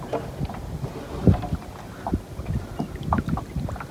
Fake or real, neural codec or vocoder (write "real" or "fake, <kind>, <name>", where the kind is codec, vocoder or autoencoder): real